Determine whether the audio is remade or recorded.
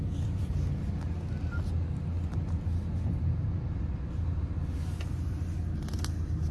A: recorded